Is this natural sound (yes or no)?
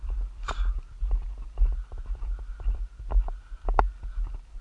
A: yes